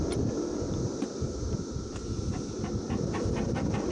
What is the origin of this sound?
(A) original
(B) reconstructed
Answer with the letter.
A